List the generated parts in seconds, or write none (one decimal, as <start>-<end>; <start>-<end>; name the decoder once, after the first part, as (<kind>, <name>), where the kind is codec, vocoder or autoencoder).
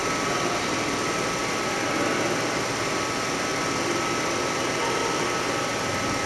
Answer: none